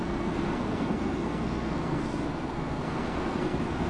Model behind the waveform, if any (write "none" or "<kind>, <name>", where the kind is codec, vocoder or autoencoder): codec, SNAC